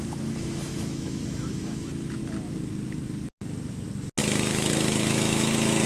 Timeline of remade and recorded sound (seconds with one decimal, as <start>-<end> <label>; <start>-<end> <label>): 0.0-2.2 remade; 2.2-4.2 recorded; 4.2-5.9 remade